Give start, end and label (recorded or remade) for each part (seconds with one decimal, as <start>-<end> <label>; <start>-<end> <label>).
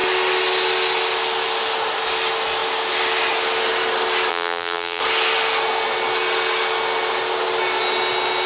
0.0-4.3 recorded; 4.3-5.0 remade; 5.0-8.5 recorded